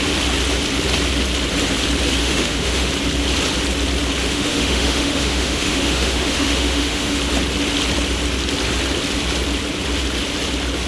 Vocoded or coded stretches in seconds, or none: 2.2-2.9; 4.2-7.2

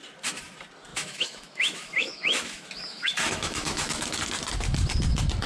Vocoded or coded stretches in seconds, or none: 0.9-4.2

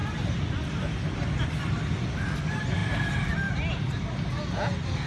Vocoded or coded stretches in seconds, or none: none

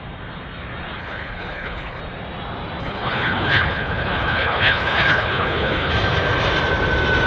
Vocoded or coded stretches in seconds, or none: 1.0-2.0; 2.8-5.9

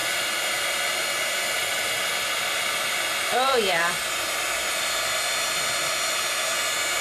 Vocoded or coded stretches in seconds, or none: 0.0-0.5; 1.6-5.2